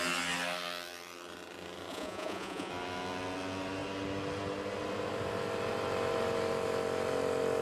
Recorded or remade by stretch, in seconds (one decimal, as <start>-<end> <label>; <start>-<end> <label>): 0.0-1.9 recorded; 1.9-2.7 remade; 2.7-7.6 recorded